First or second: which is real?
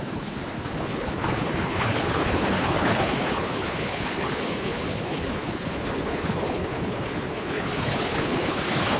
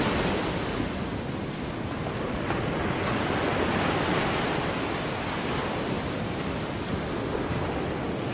second